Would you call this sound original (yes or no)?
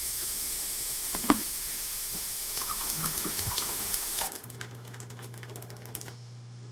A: no